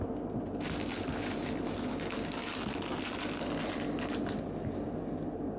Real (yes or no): yes